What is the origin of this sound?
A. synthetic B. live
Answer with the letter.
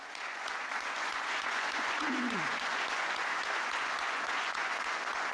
A